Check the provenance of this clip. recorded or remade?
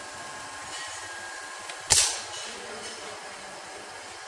recorded